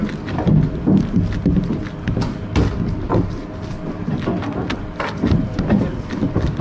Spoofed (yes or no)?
no